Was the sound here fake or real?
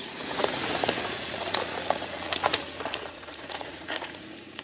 fake